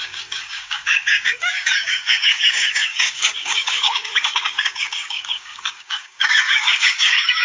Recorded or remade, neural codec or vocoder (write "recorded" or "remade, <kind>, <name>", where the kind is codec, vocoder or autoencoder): remade, codec, DAC